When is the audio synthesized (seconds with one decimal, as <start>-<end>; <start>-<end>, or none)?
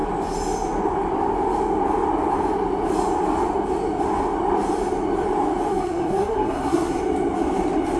5.7-7.0